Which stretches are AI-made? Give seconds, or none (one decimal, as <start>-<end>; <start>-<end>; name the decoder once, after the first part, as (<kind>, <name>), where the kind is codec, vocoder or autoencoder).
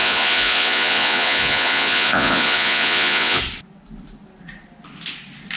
0.0-3.4 (vocoder, Vocos)